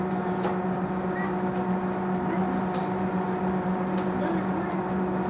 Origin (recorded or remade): recorded